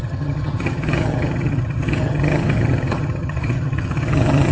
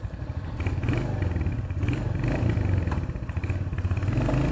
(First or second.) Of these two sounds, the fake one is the first